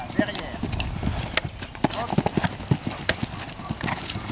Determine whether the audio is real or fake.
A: real